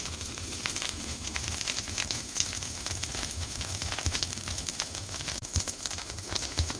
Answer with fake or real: fake